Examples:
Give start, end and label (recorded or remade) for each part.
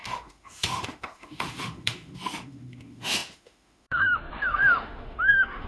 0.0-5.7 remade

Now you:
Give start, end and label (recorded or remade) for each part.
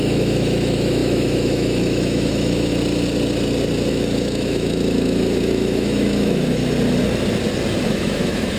0.0-2.7 remade; 2.7-3.9 recorded; 3.9-6.6 remade; 6.6-7.8 recorded; 7.8-8.6 remade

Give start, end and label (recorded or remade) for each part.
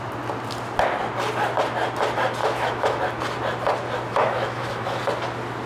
0.0-2.4 recorded; 2.4-3.0 remade; 3.0-4.1 recorded; 4.1-5.0 remade; 5.0-5.7 recorded